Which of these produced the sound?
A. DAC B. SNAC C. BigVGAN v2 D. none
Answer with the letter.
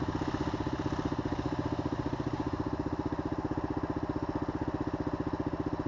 D